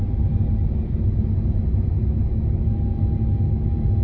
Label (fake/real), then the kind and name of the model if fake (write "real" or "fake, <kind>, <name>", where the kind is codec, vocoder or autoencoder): real